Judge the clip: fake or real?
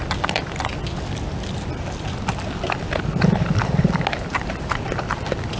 real